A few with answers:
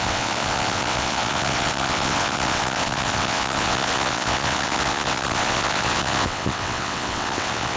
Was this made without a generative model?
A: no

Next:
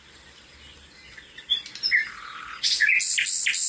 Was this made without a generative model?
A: yes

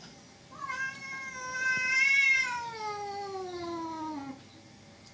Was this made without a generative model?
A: yes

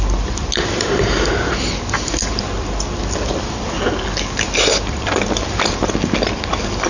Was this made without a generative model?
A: yes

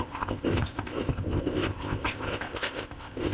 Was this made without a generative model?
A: no